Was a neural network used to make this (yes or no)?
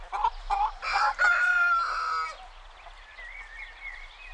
no